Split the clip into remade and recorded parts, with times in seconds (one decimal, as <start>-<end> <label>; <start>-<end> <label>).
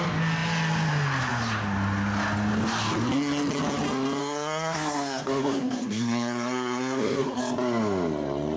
0.0-4.2 recorded; 4.2-7.4 remade; 7.4-8.6 recorded